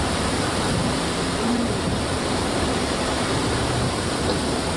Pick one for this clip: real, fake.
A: fake